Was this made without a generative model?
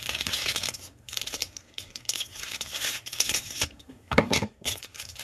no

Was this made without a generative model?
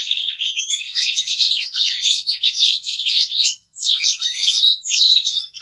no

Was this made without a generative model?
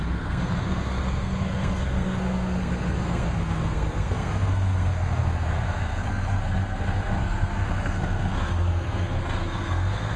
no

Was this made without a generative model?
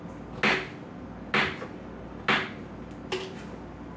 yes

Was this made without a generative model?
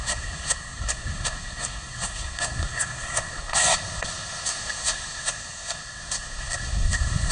no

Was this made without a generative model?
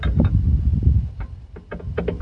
yes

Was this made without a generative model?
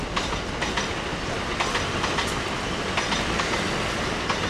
yes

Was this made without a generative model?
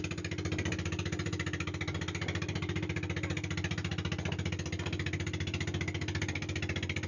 yes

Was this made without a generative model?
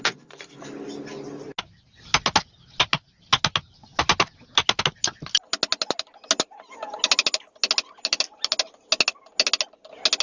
yes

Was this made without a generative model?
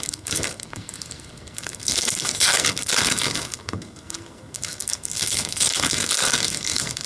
no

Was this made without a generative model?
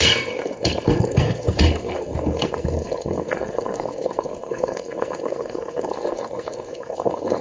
no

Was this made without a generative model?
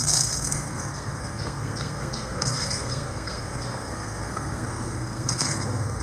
no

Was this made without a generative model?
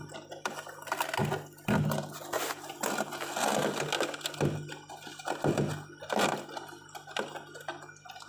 yes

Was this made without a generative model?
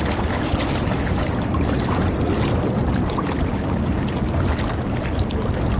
yes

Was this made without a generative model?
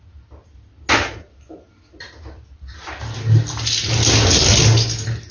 yes